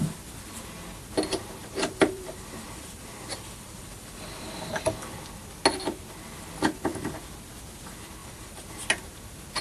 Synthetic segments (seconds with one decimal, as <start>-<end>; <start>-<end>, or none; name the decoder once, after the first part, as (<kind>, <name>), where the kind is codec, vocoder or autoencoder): 1.6-4.7 (vocoder, BigVGAN v2); 8.2-8.7